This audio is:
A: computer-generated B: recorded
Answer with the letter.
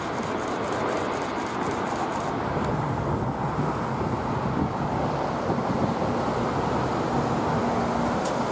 B